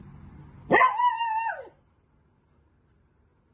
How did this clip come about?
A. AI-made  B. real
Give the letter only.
B